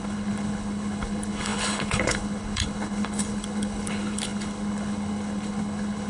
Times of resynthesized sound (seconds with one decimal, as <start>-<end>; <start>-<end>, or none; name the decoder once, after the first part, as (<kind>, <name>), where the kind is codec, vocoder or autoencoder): 0.0-6.1 (codec, HILCodec)